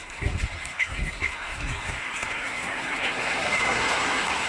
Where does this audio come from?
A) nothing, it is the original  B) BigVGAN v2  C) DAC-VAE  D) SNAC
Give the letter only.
D